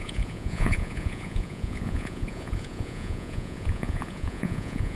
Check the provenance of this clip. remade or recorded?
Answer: remade